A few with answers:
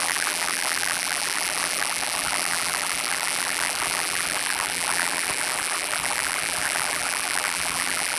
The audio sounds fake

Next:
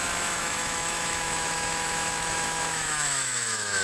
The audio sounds fake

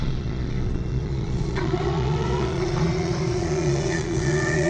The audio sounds fake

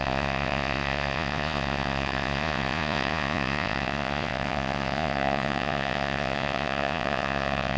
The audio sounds fake